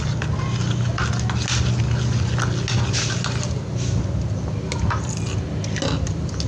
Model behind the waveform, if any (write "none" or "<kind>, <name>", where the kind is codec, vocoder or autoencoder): none